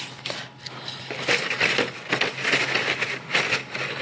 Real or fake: real